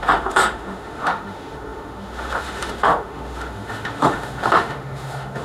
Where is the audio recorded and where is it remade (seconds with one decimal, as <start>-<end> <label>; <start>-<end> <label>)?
0.0-5.4 remade